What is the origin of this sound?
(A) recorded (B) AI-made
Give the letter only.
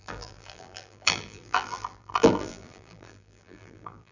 B